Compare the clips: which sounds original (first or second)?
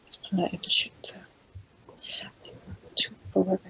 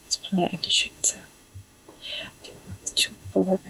first